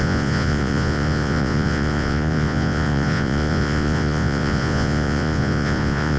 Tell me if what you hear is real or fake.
fake